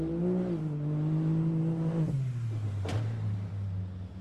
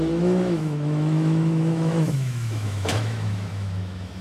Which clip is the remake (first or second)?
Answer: second